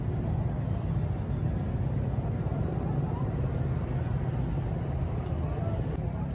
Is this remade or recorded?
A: recorded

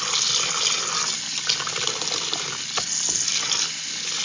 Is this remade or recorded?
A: recorded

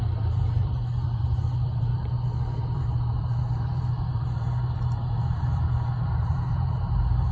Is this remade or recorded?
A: remade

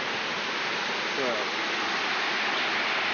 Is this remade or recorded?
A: recorded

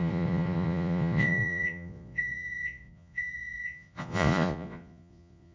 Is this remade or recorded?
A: remade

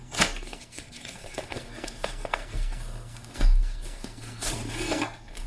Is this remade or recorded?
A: remade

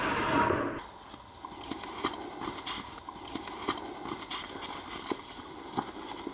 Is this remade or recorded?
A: recorded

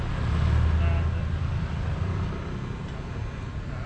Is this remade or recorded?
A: recorded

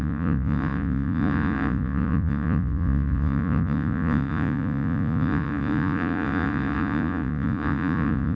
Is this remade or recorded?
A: remade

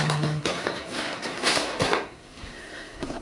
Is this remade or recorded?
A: remade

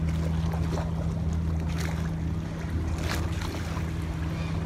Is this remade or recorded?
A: recorded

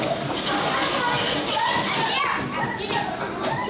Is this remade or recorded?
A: recorded